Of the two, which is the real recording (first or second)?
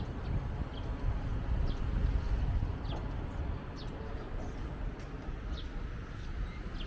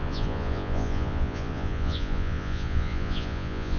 first